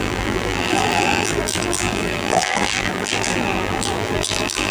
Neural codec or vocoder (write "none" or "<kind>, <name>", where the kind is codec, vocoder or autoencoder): vocoder, BigVGAN v2